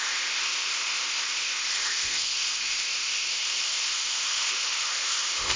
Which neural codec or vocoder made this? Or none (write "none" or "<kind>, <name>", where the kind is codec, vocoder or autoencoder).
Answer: codec, ZipCodec